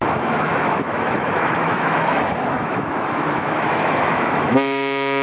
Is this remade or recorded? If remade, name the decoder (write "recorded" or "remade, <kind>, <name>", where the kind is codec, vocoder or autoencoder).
remade, autoencoder, DAC-VAE